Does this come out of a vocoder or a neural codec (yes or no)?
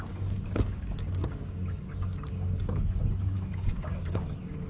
yes